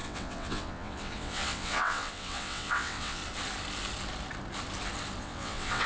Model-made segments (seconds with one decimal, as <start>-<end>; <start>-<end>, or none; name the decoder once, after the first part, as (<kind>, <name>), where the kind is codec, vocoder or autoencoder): 0.0-3.2 (vocoder, WaveNeXt); 5.2-5.9